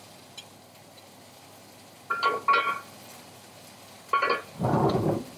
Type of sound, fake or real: real